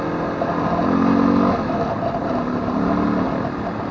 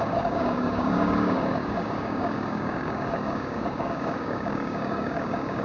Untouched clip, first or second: first